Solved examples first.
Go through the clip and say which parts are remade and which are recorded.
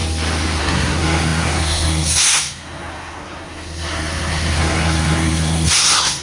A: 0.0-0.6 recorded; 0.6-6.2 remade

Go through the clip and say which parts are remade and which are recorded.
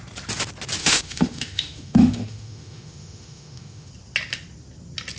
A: 0.0-0.8 recorded; 0.8-3.9 remade; 3.9-5.2 recorded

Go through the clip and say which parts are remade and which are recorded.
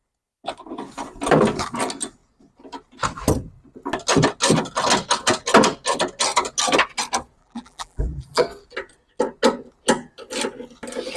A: 0.0-7.4 recorded; 7.4-8.4 remade; 8.4-11.2 recorded